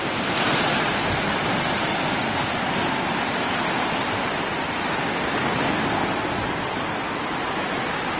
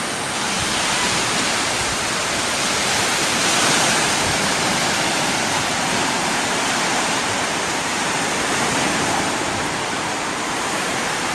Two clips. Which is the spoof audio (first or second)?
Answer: second